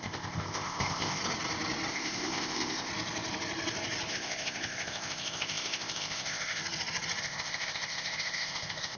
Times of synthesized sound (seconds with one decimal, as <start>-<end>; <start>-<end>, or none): 0.0-1.2; 1.9-2.9; 4.1-6.6; 7.2-9.0